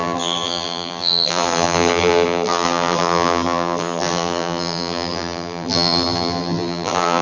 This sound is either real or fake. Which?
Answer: fake